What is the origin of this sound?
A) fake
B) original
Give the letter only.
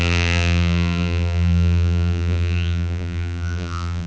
A